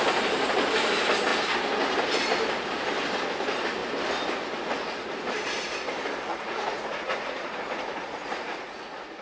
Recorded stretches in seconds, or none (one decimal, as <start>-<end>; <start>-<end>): 0.0-6.3